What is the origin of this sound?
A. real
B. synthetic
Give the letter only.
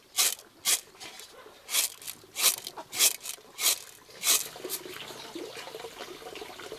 A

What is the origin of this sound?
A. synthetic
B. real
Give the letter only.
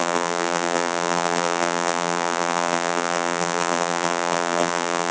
A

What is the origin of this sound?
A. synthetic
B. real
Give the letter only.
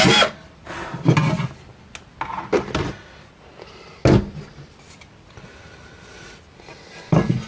B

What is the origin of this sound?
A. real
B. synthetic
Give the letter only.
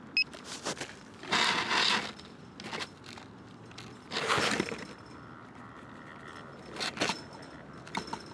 A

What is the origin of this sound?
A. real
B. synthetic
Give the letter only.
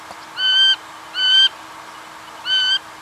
A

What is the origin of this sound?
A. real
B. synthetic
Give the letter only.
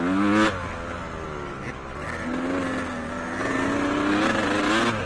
A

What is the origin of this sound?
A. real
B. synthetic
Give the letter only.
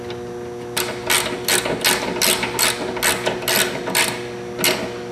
A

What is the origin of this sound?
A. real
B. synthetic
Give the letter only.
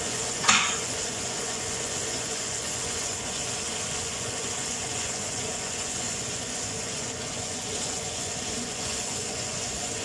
B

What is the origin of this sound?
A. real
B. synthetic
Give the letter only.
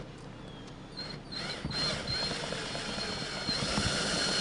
A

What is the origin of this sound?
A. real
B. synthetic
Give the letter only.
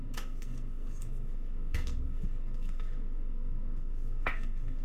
B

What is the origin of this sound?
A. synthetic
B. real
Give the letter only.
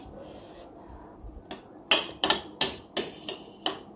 B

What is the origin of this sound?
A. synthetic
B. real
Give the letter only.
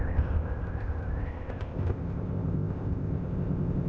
A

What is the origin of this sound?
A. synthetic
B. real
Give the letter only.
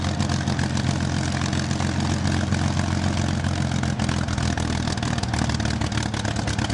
B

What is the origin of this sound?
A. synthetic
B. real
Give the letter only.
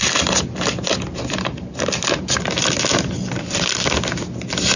B